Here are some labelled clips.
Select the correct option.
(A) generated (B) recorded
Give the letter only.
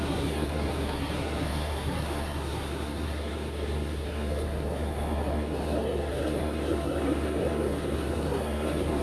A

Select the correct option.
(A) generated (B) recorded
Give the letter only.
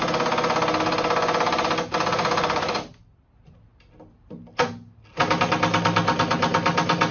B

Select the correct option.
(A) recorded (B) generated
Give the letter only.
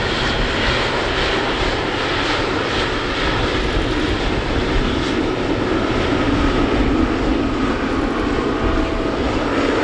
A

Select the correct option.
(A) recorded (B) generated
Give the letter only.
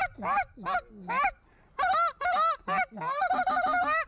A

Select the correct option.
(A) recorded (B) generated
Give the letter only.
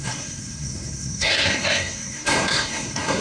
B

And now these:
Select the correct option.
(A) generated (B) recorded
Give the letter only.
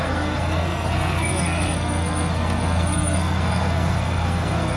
A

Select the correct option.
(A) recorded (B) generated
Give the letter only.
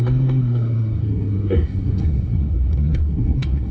B